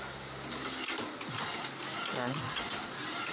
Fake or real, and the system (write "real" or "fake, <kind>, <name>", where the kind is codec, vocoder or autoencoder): real